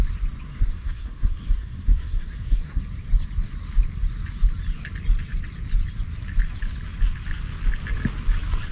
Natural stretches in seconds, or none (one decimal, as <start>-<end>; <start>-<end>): 0.0-0.4; 2.8-8.7